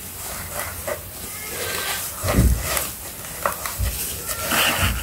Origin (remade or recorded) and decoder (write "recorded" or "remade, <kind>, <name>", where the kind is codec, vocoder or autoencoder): recorded